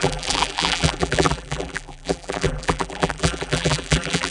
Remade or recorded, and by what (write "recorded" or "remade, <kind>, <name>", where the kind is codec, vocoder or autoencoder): remade, vocoder, BigVGAN v2